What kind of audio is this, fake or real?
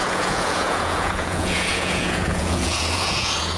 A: fake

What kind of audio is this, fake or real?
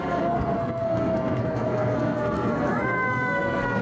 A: fake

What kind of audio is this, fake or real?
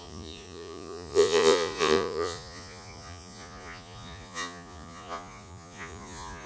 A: fake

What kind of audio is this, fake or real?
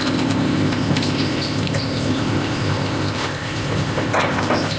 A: fake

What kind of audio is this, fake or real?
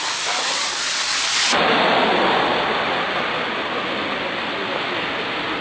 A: real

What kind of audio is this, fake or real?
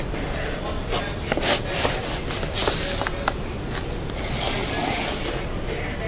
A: real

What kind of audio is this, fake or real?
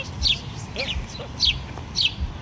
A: real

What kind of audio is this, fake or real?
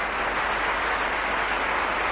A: real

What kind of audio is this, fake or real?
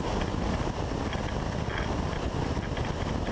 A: real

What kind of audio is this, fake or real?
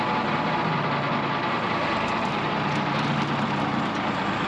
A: real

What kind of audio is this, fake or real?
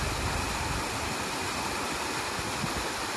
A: real